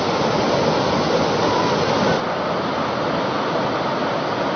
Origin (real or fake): real